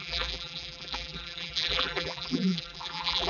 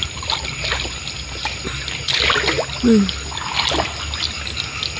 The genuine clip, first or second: second